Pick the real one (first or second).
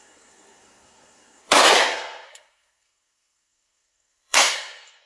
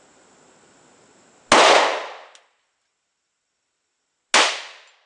second